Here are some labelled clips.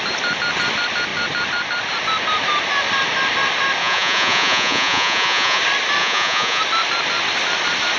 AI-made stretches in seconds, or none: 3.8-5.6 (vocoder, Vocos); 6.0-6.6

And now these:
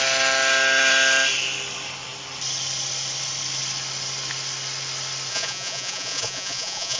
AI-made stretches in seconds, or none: 5.3-7.0 (vocoder, Vocos)

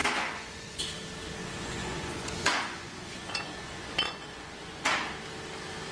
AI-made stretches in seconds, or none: 0.0-0.8 (vocoder, Vocos); 1.4-4.9

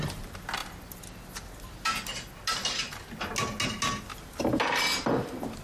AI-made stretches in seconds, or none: none

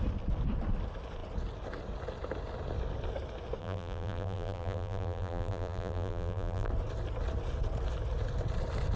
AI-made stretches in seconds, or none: 3.6-6.7 (vocoder, BigVGAN v2)